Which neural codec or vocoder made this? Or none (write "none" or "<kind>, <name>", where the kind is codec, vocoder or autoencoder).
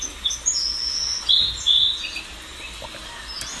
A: none